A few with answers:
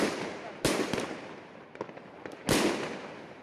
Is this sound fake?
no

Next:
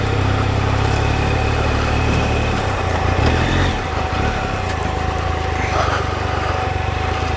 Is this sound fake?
yes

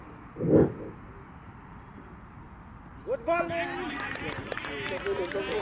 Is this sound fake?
no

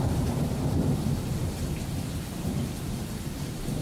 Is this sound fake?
yes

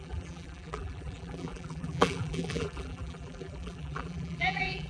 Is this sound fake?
yes